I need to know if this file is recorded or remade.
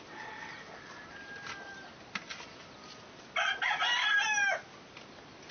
recorded